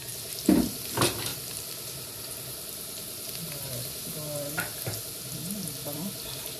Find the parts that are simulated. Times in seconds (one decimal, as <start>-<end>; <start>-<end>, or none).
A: 1.3-3.4